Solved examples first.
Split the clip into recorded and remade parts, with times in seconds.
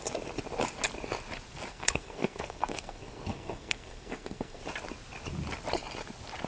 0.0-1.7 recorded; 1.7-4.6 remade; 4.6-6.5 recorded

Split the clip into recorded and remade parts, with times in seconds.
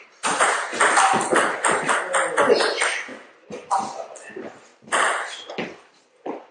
0.0-6.5 recorded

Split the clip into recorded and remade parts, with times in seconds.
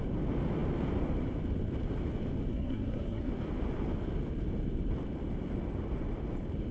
0.0-2.5 recorded; 2.5-3.3 remade; 3.3-6.7 recorded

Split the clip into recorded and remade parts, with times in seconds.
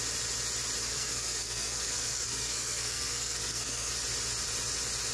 0.0-0.8 recorded; 0.8-3.9 remade; 3.9-5.1 recorded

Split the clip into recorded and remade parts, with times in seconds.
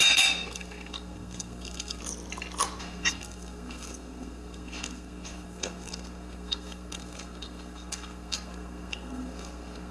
0.0-2.0 remade; 2.0-2.8 recorded; 2.8-9.9 remade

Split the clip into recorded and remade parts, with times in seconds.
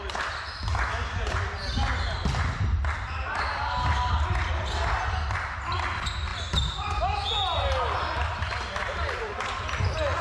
0.0-10.2 recorded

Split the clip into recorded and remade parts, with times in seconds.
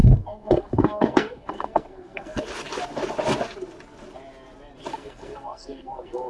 0.0-2.4 remade; 2.4-4.9 recorded; 4.9-6.3 remade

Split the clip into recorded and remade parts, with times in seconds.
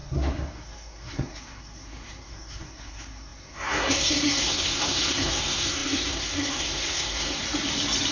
0.0-7.4 remade; 7.4-8.1 recorded